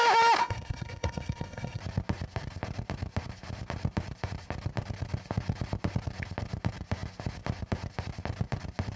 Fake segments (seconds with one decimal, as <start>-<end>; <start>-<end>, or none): 0.4-1.8